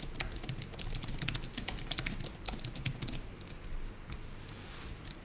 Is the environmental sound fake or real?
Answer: fake